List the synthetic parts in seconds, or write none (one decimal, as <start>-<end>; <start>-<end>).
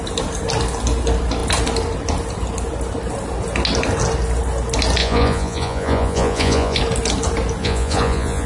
5.0-6.8; 7.6-8.5